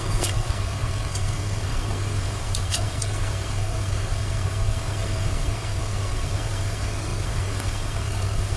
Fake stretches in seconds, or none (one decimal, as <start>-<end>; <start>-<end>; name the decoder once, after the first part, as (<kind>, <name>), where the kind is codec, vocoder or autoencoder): 0.0-8.6 (codec, SNAC)